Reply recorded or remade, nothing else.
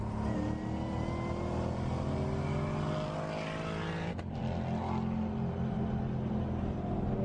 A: recorded